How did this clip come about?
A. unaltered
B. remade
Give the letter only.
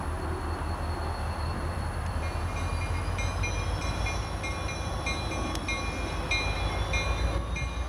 A